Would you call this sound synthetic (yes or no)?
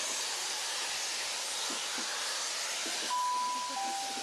no